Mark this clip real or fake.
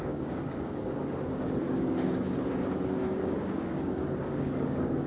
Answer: fake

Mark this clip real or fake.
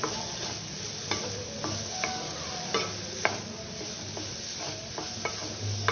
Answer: real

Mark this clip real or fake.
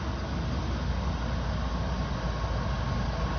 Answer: real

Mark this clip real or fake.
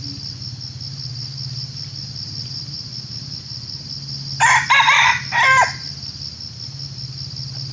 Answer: real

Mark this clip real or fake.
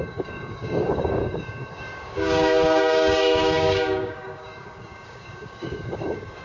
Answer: fake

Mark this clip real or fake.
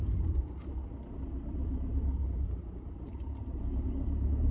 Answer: real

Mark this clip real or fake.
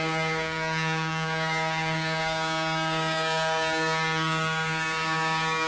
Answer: fake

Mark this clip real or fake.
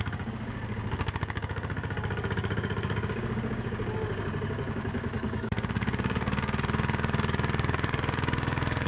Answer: fake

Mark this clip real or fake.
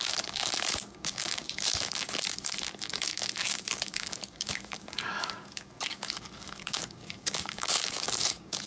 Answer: fake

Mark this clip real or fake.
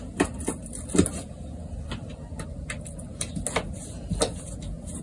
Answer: real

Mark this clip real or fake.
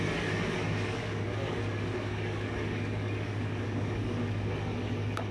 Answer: fake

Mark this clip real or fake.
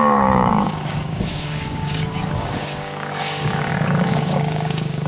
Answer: fake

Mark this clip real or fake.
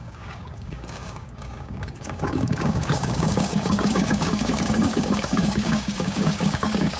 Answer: fake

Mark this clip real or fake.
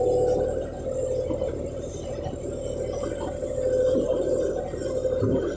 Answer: real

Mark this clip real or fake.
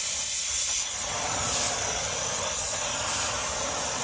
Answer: real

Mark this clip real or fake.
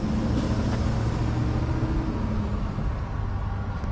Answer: real